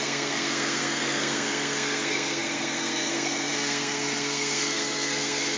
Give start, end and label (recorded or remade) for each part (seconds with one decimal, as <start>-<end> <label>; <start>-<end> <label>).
0.0-5.6 remade

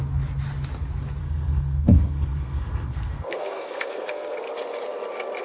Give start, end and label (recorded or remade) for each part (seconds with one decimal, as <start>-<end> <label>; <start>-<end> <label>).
0.0-1.2 recorded; 1.2-4.4 remade; 4.4-5.4 recorded

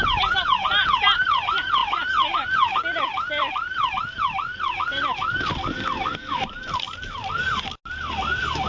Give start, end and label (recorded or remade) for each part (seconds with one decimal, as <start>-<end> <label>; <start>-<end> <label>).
0.0-8.7 recorded